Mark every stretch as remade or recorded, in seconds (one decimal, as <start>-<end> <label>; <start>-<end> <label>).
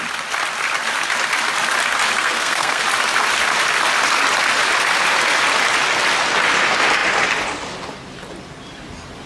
0.0-2.2 recorded; 2.2-2.8 remade; 2.8-9.3 recorded